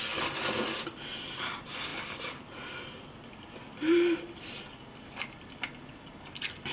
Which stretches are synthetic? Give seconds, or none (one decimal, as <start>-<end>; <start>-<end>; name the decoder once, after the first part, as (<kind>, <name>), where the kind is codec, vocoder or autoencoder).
none